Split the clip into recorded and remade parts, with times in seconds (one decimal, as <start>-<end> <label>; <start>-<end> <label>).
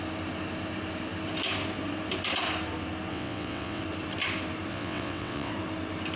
0.0-3.1 recorded; 3.1-3.8 remade; 3.8-4.7 recorded; 4.7-5.5 remade; 5.5-6.2 recorded